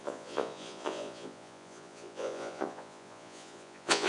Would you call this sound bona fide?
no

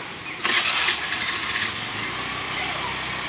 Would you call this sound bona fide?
yes